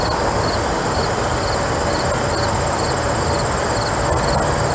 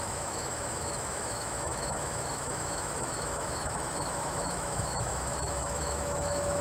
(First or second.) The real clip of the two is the first